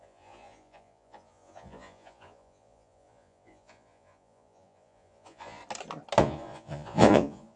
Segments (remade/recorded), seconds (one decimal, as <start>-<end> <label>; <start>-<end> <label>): 0.0-5.6 remade; 5.6-6.2 recorded; 6.2-7.6 remade